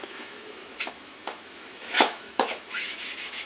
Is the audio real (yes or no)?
no